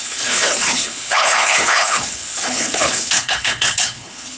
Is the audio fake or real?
fake